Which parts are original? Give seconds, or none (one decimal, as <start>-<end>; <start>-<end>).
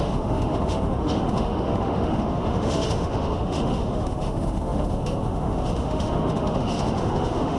none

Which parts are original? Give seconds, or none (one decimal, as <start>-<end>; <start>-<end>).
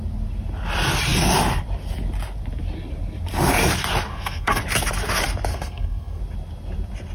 0.0-4.1; 4.6-5.5; 6.2-7.1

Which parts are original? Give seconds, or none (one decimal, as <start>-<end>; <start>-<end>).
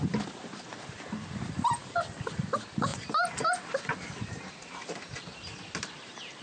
0.0-6.4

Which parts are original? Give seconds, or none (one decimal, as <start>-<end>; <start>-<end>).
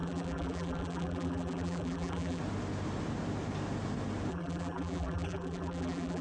2.4-4.3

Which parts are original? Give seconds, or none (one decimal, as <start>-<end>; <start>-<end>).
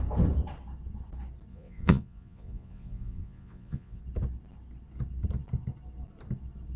0.0-1.5; 4.0-6.8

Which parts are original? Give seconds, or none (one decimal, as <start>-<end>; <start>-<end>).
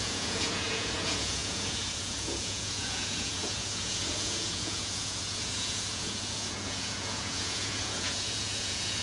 none